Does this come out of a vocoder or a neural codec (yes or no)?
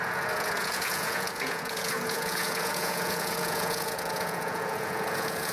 yes